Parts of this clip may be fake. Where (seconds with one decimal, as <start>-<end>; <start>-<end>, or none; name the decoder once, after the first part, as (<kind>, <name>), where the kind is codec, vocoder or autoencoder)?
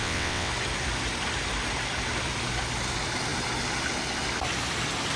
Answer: 0.0-0.5 (vocoder, WaveNeXt)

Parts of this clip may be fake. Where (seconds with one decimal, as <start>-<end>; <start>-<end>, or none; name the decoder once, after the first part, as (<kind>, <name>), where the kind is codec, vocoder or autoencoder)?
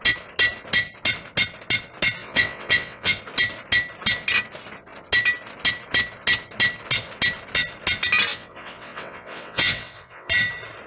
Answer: 2.2-3.2 (vocoder, WaveNeXt); 8.3-10.3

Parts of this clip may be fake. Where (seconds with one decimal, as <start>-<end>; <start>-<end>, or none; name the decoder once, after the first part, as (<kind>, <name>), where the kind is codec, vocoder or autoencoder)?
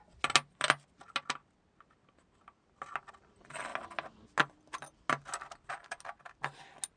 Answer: none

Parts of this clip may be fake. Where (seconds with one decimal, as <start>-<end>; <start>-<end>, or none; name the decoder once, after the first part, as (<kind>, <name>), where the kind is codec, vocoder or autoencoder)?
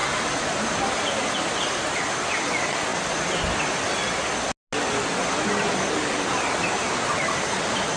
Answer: none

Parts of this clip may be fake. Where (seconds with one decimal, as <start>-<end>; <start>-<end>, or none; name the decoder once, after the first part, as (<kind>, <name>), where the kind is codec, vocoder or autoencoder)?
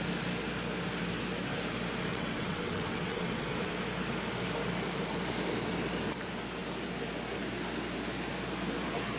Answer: 2.1-3.7 (vocoder, WaveNeXt)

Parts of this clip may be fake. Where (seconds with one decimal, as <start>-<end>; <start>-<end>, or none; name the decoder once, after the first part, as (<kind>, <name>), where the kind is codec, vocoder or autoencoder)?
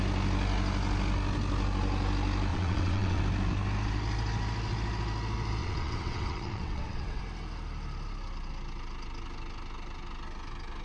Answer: 2.5-3.2 (vocoder, WaveNeXt); 5.6-7.2